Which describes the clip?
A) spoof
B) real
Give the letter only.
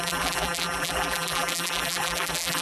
A